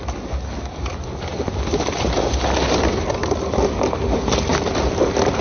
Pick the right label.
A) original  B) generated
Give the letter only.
A